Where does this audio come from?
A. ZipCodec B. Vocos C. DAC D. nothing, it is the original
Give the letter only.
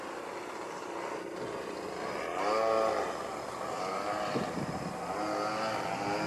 D